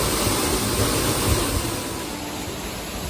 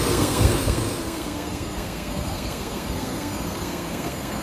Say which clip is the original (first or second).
first